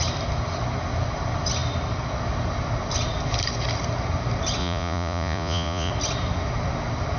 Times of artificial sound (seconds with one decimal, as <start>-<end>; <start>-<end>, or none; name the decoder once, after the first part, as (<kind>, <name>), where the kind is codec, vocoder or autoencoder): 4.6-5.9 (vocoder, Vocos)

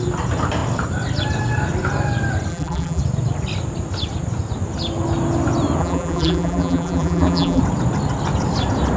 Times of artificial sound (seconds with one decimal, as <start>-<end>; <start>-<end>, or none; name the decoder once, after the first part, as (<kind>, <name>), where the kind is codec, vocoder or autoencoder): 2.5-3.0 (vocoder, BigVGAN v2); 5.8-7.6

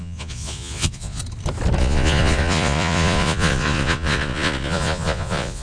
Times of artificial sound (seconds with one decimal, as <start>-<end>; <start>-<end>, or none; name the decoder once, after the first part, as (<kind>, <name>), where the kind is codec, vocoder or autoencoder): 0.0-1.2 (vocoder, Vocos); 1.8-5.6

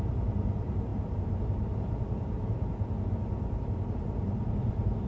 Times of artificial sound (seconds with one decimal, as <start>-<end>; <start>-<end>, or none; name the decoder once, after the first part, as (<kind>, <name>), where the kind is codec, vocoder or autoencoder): none

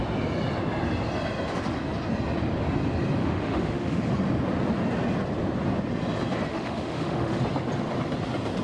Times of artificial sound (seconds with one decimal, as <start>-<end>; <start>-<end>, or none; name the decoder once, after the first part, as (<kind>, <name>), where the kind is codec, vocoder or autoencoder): 3.2-4.1 (autoencoder, DAC-VAE); 6.5-7.4

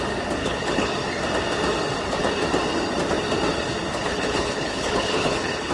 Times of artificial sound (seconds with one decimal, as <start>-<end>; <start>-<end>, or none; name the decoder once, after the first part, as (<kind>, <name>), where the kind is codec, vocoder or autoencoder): 0.4-0.9 (codec, HILCodec); 3.9-5.7

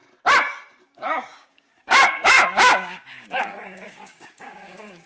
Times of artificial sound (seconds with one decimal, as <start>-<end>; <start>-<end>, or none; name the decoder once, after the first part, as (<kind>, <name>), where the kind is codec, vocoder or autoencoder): 0.8-5.1 (codec, DAC)

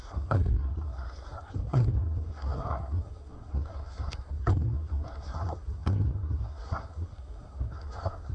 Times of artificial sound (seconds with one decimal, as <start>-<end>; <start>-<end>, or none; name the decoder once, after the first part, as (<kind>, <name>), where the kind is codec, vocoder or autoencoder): 0.0-8.3 (codec, SNAC)